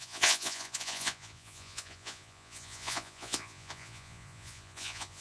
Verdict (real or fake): fake